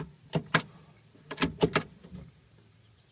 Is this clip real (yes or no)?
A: yes